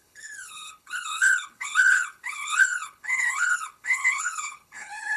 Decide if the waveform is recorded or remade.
remade